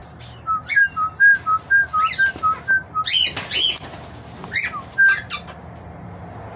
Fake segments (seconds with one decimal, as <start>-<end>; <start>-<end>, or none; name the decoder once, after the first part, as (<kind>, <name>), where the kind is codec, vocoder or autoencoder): none